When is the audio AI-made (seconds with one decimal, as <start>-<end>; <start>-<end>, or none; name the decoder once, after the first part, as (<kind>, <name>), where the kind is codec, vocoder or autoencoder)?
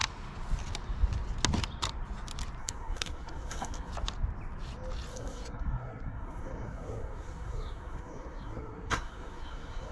2.6-3.9 (codec, SNAC); 5.1-9.9